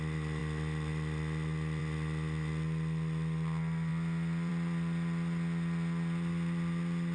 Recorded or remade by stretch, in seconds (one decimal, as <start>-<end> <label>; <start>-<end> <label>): 0.0-7.1 recorded